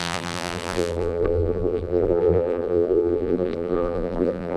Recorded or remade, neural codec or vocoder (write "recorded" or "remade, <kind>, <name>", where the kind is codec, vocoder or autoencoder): remade, vocoder, BigVGAN v2